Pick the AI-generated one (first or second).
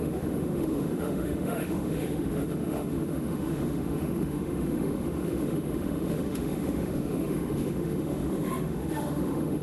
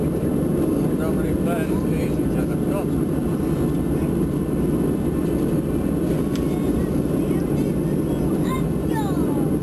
first